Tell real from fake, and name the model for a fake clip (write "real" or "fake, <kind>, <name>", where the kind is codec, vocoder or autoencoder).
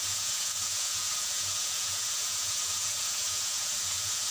fake, vocoder, Vocos